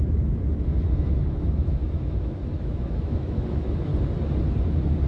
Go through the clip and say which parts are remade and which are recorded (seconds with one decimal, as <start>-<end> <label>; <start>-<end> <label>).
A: 0.0-3.9 remade; 3.9-5.1 recorded